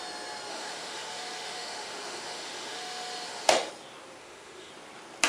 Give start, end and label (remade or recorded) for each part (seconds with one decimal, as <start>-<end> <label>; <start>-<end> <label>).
0.0-0.5 recorded; 0.5-3.7 remade; 3.7-4.2 recorded; 4.2-4.7 remade; 4.7-5.3 recorded

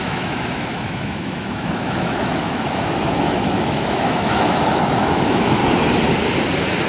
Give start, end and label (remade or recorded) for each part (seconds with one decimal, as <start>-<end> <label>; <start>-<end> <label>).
0.0-5.6 remade; 5.6-6.9 recorded

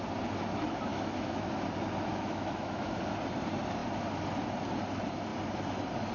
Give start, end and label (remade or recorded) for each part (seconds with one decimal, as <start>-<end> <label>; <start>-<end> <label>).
0.0-0.9 recorded; 0.9-1.5 remade; 1.5-2.1 recorded; 2.1-3.0 remade; 3.0-6.1 recorded

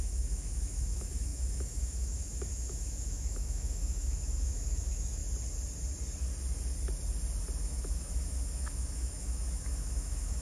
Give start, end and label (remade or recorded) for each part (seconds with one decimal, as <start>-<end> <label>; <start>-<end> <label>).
0.0-5.2 remade; 5.2-7.6 recorded; 7.6-10.4 remade

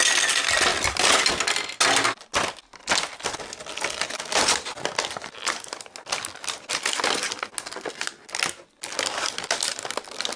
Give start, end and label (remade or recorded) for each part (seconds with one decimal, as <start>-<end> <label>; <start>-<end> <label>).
0.0-10.4 recorded

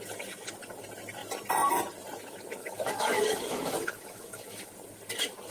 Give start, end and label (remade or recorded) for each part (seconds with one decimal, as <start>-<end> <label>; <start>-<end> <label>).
0.0-2.6 recorded; 2.6-4.7 remade; 4.7-5.5 recorded